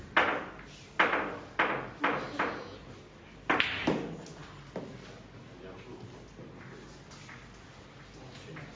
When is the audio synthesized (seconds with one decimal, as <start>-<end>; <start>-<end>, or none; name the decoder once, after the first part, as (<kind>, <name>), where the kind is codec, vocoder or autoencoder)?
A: none